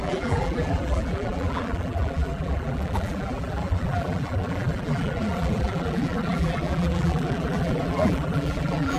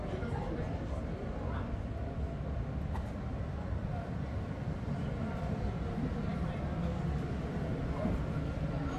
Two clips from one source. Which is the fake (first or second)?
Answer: first